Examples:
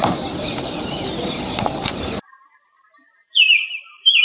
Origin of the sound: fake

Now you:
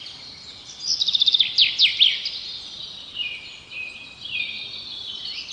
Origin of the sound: real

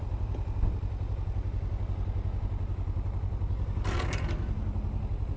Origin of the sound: real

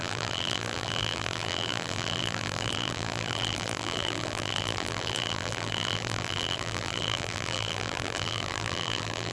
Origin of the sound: fake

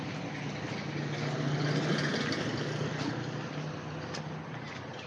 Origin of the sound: real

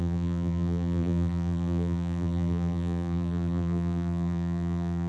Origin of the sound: fake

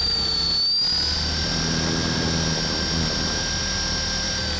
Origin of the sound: real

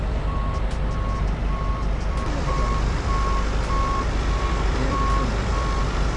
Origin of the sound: fake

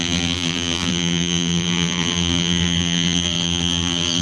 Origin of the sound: fake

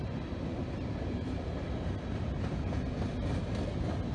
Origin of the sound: real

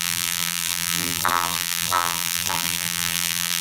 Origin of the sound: fake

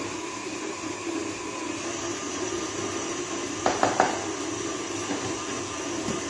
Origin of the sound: real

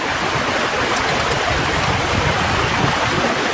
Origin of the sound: real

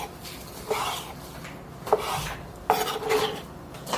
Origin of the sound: real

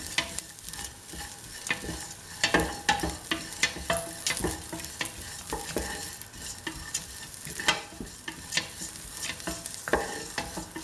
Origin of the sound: real